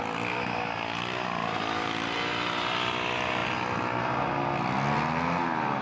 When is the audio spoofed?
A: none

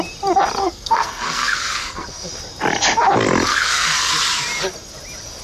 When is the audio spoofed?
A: 0.6-2.3 (codec, SNAC); 3.5-4.1

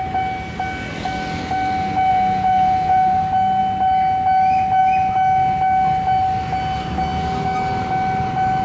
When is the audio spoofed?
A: 2.1-3.2 (vocoder, Vocos)

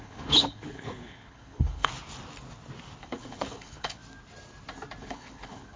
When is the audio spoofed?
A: 0.0-1.9 (codec, HILCodec); 3.0-4.0; 5.0-5.8

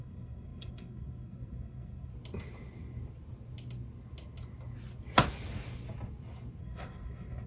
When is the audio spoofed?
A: 0.0-2.1 (codec, SNAC); 6.6-7.5